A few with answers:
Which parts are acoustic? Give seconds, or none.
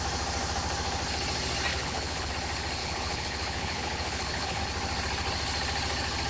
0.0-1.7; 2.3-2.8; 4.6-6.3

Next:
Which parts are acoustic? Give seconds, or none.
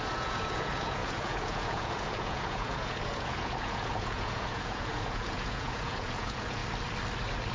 6.6-7.5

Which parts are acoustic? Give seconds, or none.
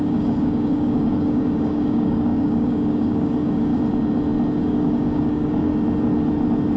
3.7-4.6; 5.7-6.8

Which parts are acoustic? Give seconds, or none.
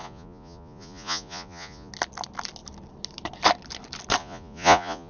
1.9-4.2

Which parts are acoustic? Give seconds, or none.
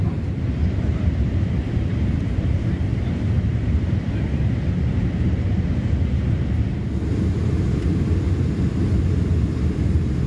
1.5-2.9; 4.6-10.3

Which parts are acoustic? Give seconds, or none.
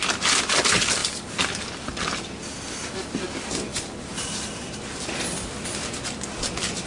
0.0-1.0; 5.1-6.9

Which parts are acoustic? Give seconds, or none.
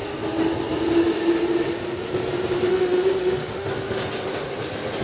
0.0-2.7; 3.7-5.0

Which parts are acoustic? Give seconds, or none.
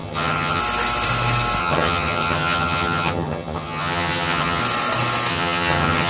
0.6-1.6; 4.6-5.3